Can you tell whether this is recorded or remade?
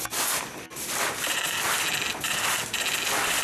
recorded